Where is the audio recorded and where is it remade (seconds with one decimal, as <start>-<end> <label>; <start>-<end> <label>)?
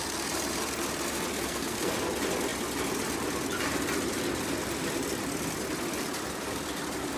0.0-1.3 recorded; 1.3-1.9 remade; 1.9-7.2 recorded